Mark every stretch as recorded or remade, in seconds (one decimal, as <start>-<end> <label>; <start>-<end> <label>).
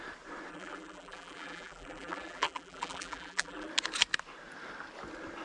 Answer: 0.0-0.5 recorded; 0.5-3.7 remade; 3.7-5.4 recorded